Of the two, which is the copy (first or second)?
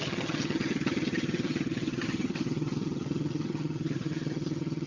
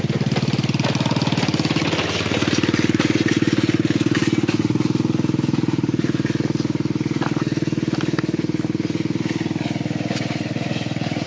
first